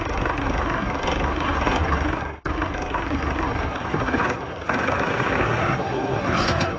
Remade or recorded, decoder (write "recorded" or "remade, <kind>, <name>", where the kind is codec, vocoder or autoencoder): remade, codec, SNAC